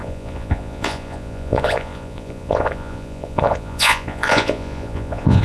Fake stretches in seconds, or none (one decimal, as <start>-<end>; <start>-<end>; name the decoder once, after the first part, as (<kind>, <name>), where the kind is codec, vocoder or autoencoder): 0.0-5.4 (vocoder, Vocos)